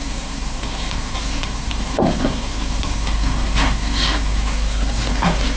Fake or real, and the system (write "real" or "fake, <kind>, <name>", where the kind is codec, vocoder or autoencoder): fake, codec, SNAC